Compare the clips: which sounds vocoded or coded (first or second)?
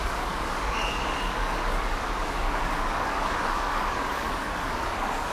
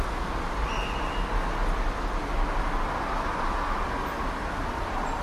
first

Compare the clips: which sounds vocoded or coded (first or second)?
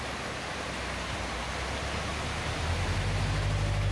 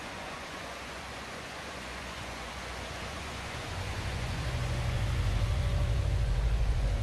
second